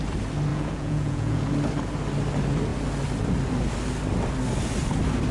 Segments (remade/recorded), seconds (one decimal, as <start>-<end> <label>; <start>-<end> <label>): 0.0-0.5 recorded; 0.5-1.5 remade; 1.5-5.3 recorded